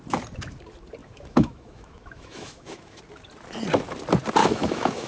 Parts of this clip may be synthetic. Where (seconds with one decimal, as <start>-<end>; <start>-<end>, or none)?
1.0-3.0; 4.4-5.1